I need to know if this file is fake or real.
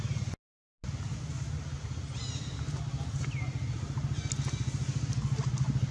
real